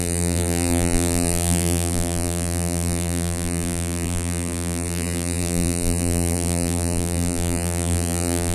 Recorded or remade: remade